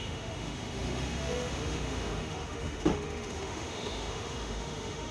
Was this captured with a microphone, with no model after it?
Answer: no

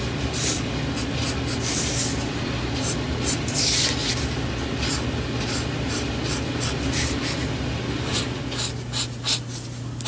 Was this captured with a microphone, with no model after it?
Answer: yes